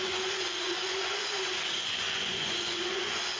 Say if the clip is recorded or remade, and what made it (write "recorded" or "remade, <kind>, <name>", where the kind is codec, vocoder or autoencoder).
remade, vocoder, Vocos